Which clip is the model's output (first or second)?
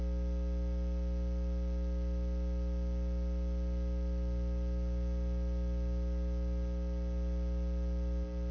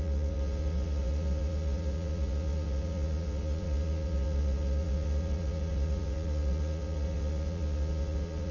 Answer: second